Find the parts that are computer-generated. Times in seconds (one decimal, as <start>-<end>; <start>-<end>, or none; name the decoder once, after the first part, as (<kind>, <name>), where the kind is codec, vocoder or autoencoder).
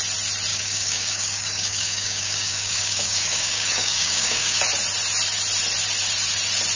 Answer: 0.5-4.6 (codec, DAC)